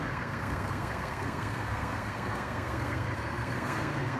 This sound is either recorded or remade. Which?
remade